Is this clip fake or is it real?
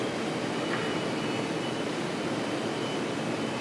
real